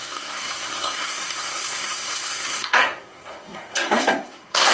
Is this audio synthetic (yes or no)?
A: yes